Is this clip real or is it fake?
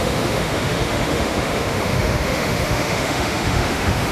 fake